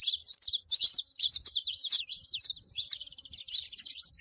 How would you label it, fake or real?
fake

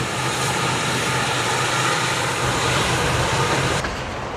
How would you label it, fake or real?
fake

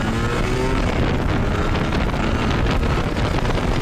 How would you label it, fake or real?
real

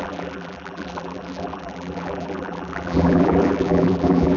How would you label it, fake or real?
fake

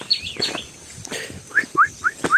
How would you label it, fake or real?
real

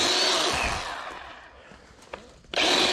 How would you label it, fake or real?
real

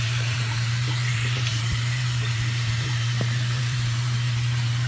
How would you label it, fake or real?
fake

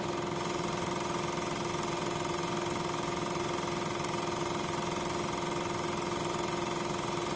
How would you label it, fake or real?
real